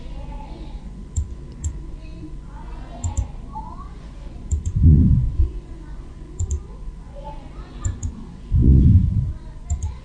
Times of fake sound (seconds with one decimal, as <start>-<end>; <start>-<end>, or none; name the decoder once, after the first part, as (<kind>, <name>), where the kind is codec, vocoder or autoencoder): 0.0-10.0 (vocoder, Vocos)